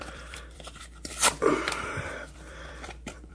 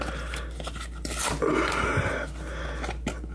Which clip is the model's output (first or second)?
first